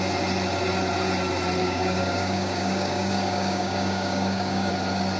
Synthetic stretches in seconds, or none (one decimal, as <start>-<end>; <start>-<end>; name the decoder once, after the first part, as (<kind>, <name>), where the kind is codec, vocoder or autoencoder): 1.6-4.7 (codec, DAC)